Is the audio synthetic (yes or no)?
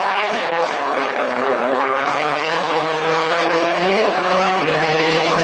yes